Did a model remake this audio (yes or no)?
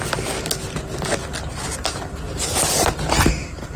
no